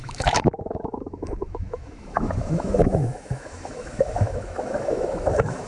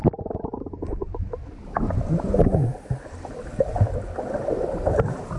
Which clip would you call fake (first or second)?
first